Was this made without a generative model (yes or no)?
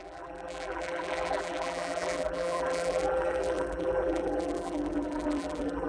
no